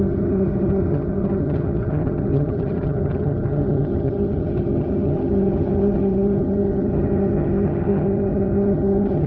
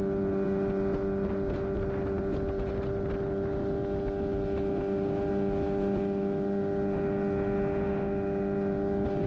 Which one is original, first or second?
second